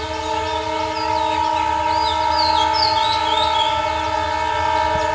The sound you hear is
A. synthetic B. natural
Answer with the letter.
B